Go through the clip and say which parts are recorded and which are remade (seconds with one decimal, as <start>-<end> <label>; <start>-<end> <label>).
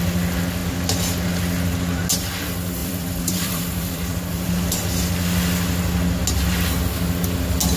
0.0-2.8 recorded; 2.8-4.5 remade; 4.5-7.8 recorded